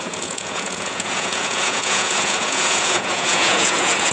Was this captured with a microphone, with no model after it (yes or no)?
no